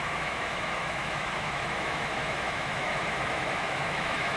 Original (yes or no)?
no